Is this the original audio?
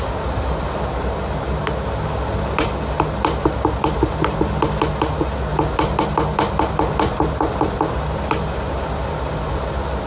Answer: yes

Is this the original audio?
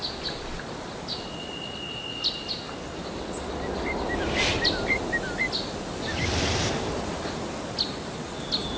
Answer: yes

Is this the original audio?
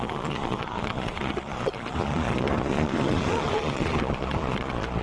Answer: no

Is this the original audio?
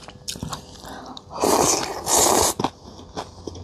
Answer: yes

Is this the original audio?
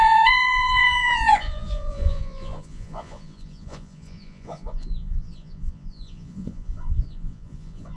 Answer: no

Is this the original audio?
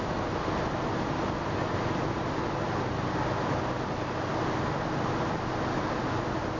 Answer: yes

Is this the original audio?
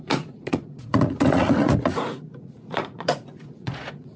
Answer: no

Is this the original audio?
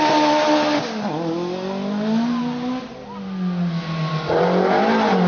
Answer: yes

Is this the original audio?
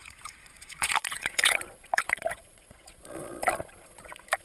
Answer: no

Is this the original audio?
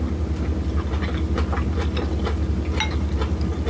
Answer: yes